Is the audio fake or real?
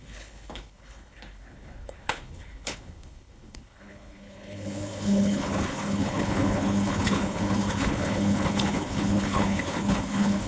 fake